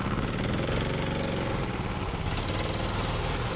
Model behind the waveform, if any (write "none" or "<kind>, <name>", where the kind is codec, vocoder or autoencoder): none